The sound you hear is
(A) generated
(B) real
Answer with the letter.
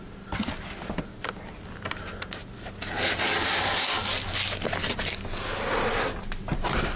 B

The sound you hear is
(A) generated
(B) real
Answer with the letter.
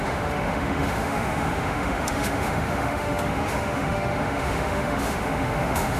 A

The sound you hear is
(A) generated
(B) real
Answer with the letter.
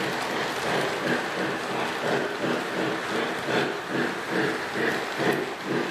B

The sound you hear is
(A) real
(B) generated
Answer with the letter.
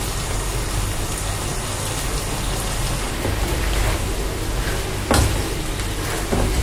A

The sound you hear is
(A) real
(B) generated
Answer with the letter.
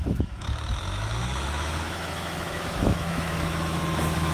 B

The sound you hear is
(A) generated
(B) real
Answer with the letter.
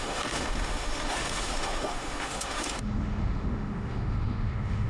A